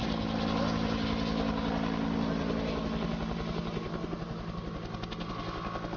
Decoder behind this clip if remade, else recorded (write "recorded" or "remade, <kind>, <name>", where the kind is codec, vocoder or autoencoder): recorded